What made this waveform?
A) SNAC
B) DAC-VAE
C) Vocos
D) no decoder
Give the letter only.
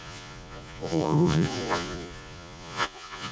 C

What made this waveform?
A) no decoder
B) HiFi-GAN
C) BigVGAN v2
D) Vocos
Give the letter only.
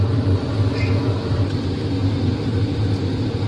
A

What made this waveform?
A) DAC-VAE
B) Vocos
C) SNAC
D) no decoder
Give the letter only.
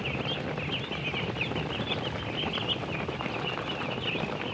D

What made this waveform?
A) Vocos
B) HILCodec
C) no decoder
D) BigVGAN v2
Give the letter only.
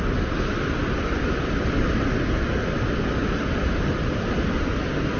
C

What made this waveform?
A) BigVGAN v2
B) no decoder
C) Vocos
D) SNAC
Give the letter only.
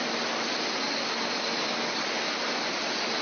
B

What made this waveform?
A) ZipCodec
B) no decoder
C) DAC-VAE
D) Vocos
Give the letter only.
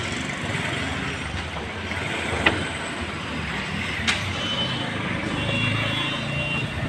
B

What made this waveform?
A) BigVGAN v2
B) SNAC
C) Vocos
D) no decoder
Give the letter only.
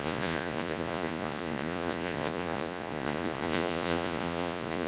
C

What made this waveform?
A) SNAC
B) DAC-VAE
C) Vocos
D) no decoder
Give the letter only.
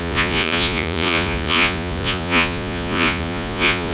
C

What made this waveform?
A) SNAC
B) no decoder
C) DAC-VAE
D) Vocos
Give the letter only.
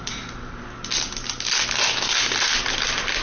B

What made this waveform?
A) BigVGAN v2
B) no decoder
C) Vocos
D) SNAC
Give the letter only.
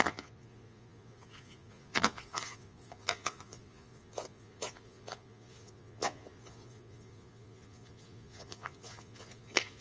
C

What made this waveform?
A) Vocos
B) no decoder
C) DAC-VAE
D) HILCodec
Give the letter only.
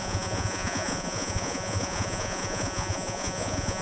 A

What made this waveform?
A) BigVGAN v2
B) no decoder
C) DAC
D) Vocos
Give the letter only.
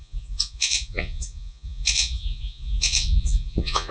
D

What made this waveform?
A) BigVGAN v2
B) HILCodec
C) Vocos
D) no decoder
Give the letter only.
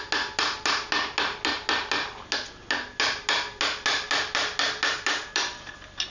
D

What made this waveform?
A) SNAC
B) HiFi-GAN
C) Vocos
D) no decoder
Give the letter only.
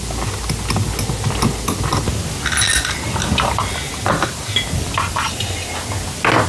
D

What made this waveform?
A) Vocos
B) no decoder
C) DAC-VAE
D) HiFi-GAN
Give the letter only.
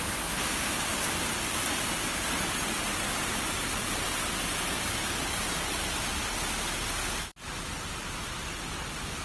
B